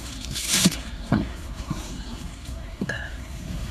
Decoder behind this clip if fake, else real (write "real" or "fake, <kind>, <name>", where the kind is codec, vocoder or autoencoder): fake, codec, SNAC